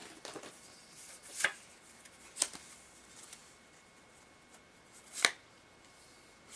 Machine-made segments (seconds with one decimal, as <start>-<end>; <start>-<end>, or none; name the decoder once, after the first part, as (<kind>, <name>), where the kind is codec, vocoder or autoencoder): none